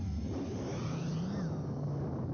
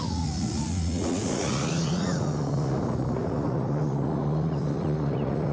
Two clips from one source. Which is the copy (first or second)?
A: second